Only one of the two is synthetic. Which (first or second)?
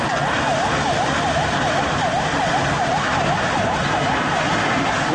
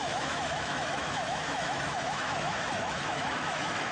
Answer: second